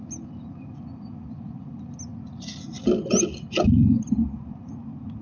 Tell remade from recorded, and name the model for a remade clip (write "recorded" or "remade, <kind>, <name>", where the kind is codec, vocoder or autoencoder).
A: recorded